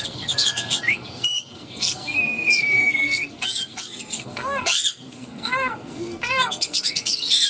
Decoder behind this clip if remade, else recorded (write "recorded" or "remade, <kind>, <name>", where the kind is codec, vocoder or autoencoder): remade, codec, SNAC